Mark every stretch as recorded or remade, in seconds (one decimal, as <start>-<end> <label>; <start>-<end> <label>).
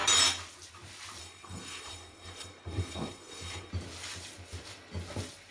0.0-1.2 recorded; 1.2-3.7 remade; 3.7-5.5 recorded